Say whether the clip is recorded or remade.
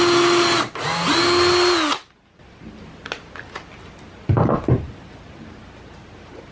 recorded